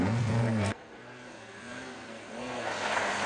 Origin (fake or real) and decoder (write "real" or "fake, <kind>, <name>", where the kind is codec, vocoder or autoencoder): fake, codec, SNAC